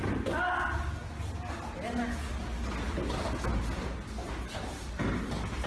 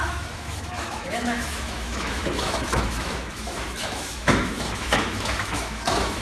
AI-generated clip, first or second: second